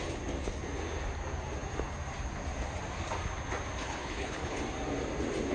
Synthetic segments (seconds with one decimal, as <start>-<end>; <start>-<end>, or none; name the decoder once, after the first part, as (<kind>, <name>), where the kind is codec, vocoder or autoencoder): 3.8-4.6 (codec, HILCodec)